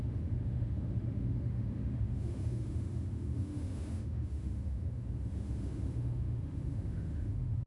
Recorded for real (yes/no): no